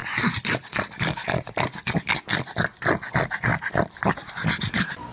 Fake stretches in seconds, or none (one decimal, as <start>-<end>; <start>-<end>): none